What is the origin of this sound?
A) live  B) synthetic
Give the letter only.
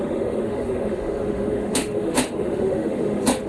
B